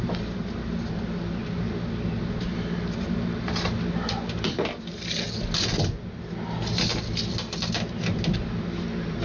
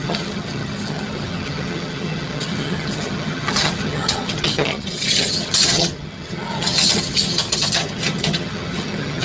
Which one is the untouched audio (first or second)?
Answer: first